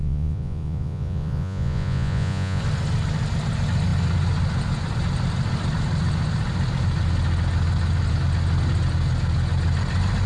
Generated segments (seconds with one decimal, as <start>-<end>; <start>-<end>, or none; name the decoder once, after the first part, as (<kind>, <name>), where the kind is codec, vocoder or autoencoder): 0.0-2.6 (vocoder, Vocos)